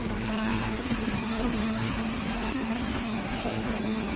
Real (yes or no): no